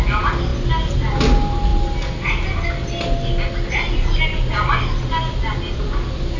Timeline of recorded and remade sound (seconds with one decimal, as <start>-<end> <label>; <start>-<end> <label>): 0.0-6.4 recorded